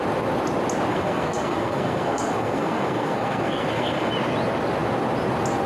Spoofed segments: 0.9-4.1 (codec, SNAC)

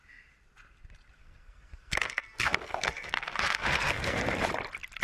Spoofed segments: 1.2-4.2 (codec, SNAC)

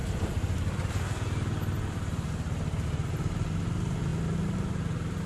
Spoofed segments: none

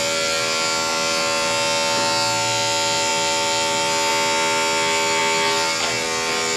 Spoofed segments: none

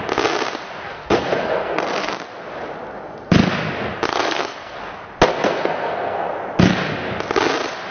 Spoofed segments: 0.8-2.1 (codec, SNAC); 4.1-4.8; 5.3-6.4

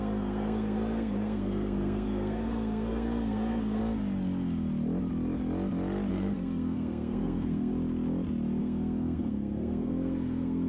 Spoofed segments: 0.0-3.8 (codec, SNAC); 6.1-7.7; 8.6-10.7

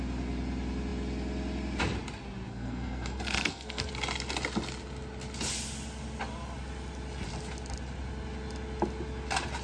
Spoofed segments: 2.5-3.9 (codec, SNAC)

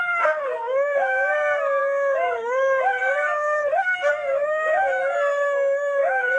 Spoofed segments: 0.0-6.4 (codec, SNAC)